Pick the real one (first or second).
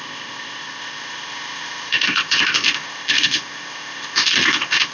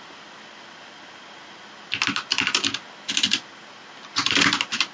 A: second